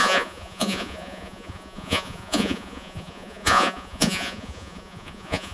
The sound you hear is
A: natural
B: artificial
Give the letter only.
B